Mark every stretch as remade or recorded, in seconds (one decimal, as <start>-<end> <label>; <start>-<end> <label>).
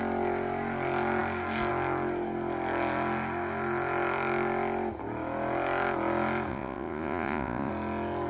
0.0-6.5 recorded; 6.5-7.7 remade; 7.7-8.3 recorded